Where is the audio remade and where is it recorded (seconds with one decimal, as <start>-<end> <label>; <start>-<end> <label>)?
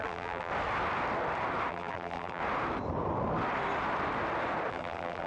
0.0-0.5 remade; 0.5-1.7 recorded; 1.7-2.4 remade; 2.4-4.7 recorded; 4.7-5.3 remade